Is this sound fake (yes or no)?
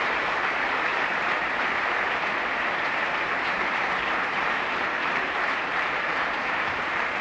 yes